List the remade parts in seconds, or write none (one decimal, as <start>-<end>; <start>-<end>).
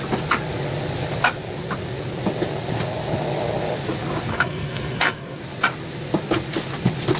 4.3-5.4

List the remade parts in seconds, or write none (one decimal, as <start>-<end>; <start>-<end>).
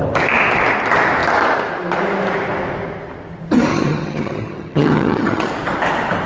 3.7-5.5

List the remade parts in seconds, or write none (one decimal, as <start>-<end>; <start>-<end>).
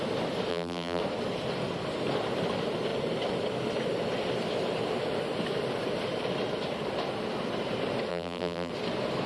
0.5-1.0; 8.1-8.7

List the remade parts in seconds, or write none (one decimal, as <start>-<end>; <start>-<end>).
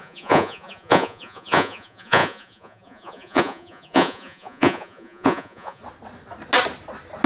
0.0-5.8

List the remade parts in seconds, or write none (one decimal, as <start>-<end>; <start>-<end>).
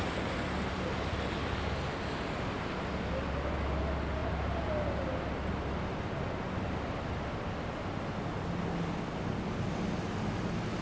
none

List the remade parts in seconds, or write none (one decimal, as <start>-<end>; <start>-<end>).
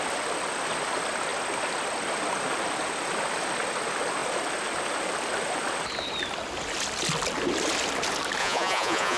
8.4-9.2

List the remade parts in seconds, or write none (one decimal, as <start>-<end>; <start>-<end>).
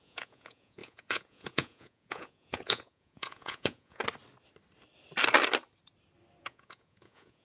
0.0-4.0; 6.4-7.4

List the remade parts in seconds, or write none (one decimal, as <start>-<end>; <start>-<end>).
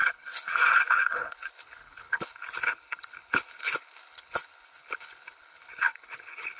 0.0-6.6